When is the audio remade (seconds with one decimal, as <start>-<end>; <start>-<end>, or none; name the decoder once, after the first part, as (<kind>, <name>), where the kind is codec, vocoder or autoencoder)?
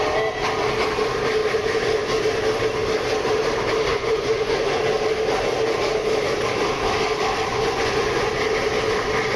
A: 3.9-4.8 (vocoder, Vocos); 7.5-8.3